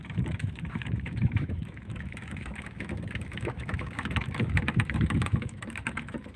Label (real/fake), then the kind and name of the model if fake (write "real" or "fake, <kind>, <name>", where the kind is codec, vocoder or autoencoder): fake, autoencoder, DAC-VAE